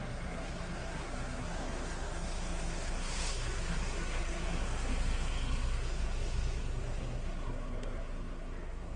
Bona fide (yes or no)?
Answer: no